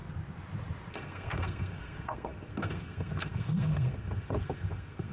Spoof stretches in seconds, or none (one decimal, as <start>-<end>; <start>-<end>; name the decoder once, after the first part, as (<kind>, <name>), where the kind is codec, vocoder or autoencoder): 0.9-5.1 (codec, SNAC)

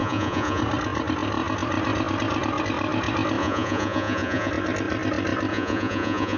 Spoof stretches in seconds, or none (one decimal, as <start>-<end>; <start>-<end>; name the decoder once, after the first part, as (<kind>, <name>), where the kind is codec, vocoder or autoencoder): 0.0-0.6 (vocoder, Vocos); 3.4-4.5; 5.5-6.4